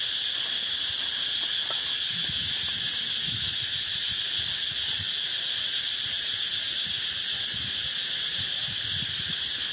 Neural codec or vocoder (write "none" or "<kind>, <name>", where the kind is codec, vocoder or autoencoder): none